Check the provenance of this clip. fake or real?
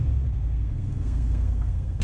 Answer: fake